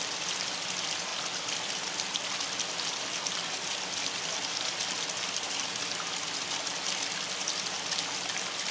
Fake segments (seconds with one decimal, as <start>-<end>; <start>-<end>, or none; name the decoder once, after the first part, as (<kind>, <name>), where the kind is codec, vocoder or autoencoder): none